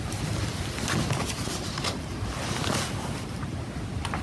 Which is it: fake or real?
real